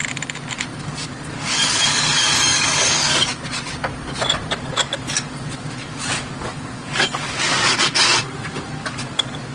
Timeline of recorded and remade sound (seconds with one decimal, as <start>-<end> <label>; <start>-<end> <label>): 0.0-0.8 recorded; 0.8-3.3 remade; 3.3-4.5 recorded; 4.5-9.5 remade